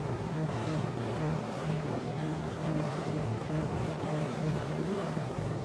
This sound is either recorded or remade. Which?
remade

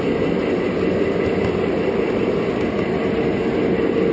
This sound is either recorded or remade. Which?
recorded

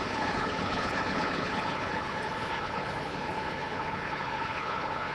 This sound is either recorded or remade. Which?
remade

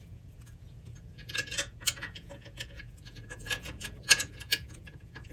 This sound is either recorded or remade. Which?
remade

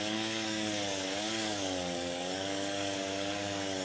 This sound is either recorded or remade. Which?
remade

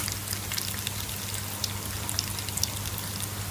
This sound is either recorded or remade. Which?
recorded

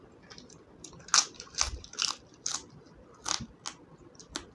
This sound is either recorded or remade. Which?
recorded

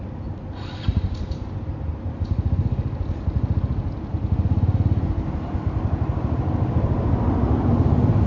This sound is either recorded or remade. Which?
recorded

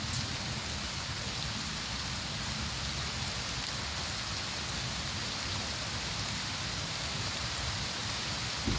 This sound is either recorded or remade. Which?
recorded